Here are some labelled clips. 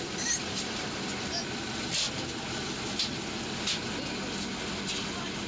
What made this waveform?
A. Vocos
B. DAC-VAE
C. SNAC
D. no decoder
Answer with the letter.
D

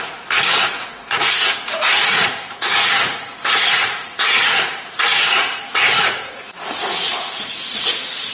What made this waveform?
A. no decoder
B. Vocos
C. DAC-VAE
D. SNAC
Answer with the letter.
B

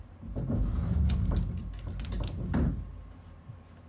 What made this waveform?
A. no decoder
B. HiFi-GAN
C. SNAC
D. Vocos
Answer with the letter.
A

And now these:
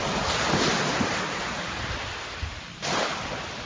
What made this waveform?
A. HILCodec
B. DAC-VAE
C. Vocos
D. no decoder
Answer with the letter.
D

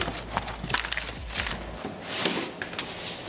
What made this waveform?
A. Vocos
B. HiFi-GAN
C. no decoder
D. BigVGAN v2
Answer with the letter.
C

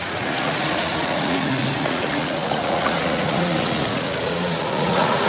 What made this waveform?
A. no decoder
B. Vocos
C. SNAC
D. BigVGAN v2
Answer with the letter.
B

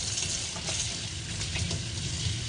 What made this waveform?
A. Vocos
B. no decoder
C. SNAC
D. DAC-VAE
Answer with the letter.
B